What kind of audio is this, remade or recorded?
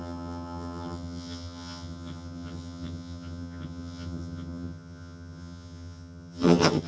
remade